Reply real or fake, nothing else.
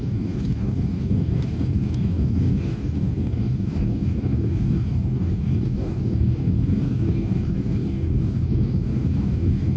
fake